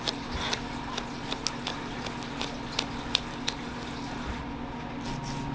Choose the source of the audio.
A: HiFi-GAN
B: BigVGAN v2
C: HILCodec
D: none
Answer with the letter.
D